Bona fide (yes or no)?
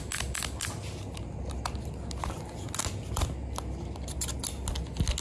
yes